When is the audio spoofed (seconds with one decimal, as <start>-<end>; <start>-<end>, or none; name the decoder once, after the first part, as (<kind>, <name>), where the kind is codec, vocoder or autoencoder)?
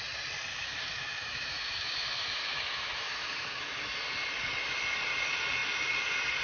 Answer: 0.5-3.8 (autoencoder, DAC-VAE)